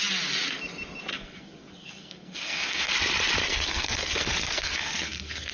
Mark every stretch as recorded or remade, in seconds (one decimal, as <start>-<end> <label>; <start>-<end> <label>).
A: 0.0-1.1 recorded; 1.1-2.9 remade; 2.9-3.4 recorded; 3.4-5.5 remade